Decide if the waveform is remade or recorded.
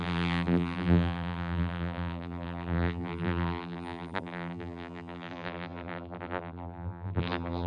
remade